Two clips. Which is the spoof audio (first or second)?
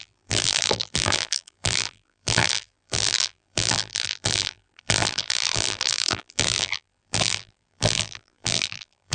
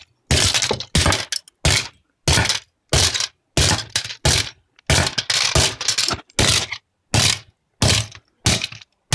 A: first